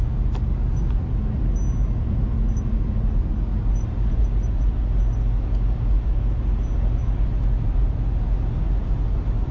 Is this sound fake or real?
real